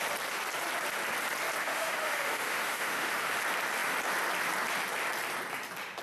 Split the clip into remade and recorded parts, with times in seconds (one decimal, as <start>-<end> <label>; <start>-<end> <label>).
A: 0.0-1.6 recorded; 1.6-3.3 remade; 3.3-6.0 recorded